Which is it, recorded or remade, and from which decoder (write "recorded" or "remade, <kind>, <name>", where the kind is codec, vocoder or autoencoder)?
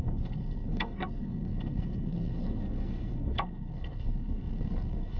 remade, codec, SNAC